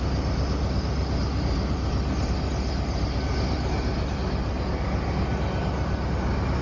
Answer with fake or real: real